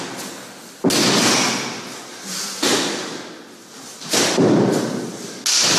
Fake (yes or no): no